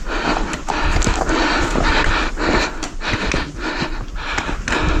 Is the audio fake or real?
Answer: real